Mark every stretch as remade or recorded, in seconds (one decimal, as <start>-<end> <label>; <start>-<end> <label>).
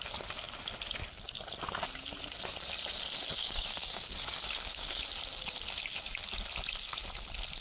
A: 0.0-3.4 recorded; 3.4-5.0 remade; 5.0-7.6 recorded